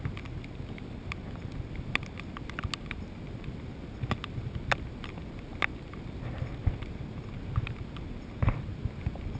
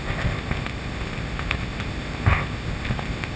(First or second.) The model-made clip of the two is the second